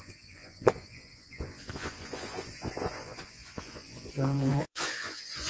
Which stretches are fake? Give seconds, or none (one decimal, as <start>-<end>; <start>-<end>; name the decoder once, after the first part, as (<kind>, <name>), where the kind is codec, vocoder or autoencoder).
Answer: 0.0-5.5 (vocoder, Vocos)